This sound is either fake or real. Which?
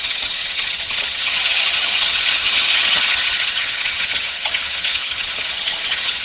fake